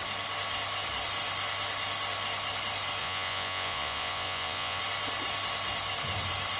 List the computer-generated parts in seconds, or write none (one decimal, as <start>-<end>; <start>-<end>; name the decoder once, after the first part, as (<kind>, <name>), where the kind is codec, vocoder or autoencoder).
3.0-4.8 (vocoder, Vocos)